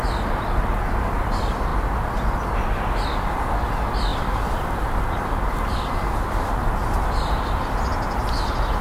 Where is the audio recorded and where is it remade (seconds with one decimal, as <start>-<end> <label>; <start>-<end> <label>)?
0.0-1.7 recorded; 1.7-2.9 remade; 2.9-4.1 recorded; 4.1-5.9 remade; 5.9-8.8 recorded